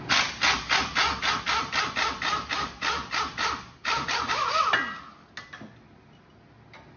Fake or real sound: real